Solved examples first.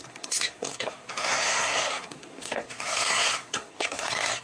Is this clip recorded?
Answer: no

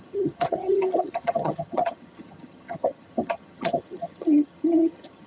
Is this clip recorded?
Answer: no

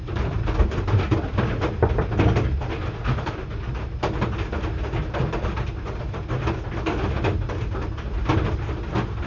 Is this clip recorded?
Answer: yes